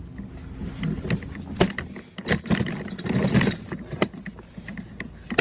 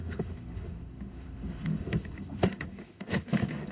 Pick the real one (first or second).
first